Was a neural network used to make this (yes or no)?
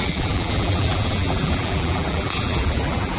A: yes